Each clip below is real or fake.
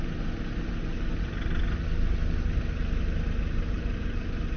real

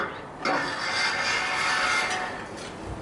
real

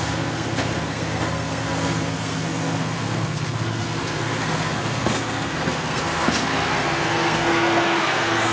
fake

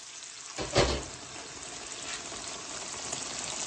real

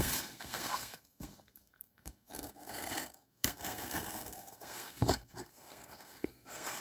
fake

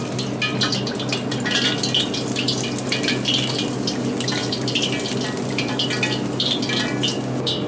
real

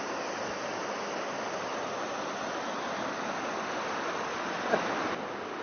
real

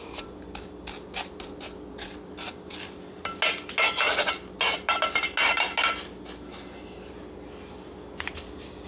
real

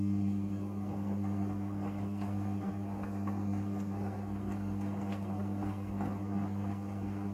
fake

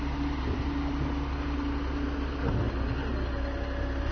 real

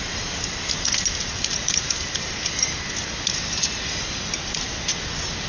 real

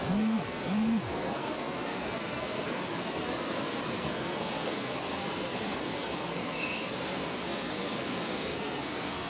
fake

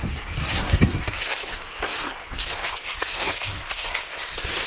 fake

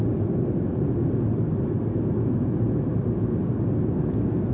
real